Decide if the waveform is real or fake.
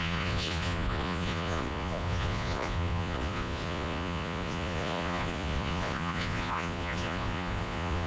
fake